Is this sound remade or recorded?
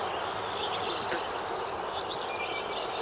recorded